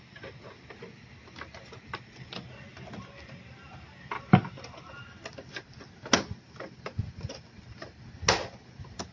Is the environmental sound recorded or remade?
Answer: recorded